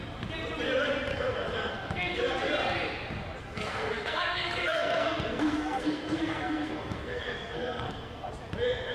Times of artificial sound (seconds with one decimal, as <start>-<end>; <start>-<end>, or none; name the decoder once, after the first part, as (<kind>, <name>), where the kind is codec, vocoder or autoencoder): 1.1-2.2 (codec, SNAC); 3.4-8.3